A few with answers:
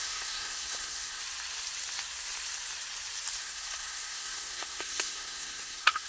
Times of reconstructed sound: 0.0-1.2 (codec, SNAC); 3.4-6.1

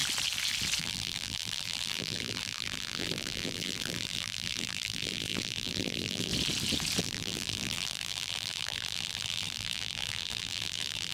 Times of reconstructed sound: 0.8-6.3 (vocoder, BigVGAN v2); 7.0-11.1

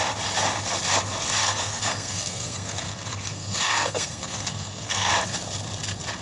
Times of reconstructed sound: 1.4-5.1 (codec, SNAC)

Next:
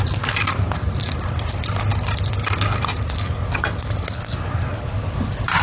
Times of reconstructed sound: none

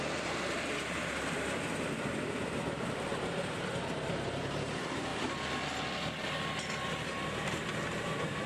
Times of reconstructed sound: 0.0-5.1 (vocoder, BigVGAN v2); 6.9-8.5

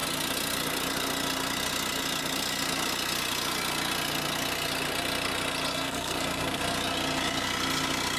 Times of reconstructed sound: 5.7-6.6 (codec, SNAC)

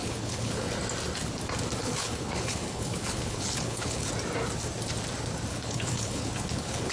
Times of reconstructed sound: 0.0-0.7 (codec, HILCodec); 1.8-4.1; 5.5-6.9